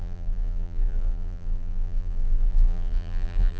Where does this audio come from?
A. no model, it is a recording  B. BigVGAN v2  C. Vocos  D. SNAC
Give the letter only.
B